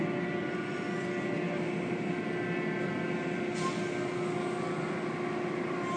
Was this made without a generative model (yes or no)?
yes